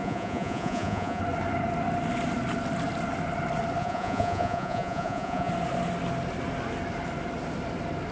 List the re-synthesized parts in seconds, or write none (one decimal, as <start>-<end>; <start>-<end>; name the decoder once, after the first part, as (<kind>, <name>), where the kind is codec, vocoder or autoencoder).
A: 0.0-1.2 (vocoder, Vocos); 3.8-5.5